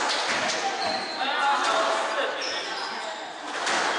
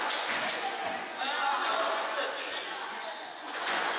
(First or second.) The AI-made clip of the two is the second